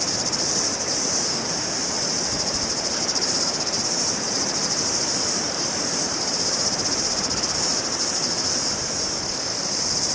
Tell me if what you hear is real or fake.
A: fake